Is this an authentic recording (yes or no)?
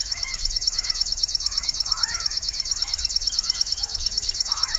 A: no